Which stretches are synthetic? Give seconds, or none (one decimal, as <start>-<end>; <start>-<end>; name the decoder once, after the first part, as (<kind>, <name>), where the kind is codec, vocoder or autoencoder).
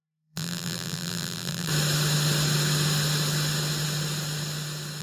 0.0-1.7 (vocoder, BigVGAN v2)